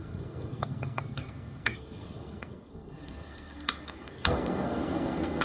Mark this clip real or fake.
fake